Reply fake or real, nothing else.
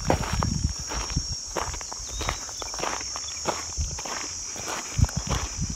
real